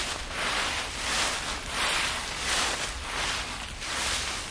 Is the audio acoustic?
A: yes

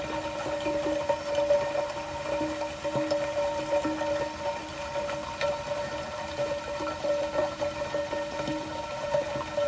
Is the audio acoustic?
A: yes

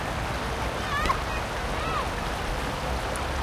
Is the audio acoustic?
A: yes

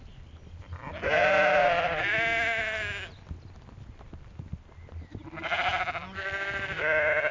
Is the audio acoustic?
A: yes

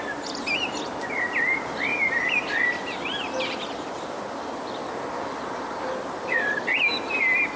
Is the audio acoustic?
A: yes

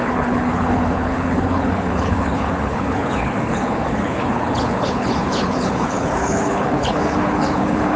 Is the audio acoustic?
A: no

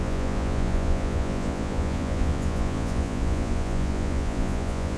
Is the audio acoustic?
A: no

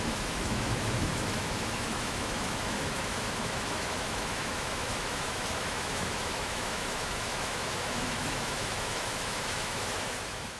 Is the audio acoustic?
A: no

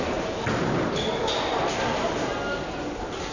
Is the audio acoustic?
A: yes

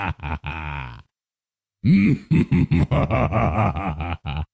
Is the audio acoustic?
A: no